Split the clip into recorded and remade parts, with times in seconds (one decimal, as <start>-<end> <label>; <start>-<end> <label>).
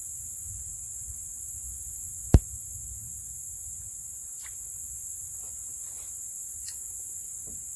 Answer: 0.0-7.8 recorded